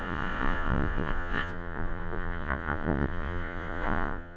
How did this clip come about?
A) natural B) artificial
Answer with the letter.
B